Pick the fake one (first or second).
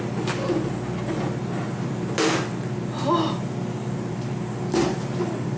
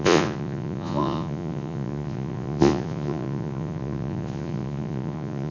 second